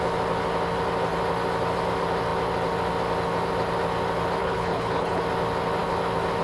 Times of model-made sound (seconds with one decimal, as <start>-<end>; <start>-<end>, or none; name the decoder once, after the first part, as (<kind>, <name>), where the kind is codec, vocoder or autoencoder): 4.4-5.2 (codec, HILCodec)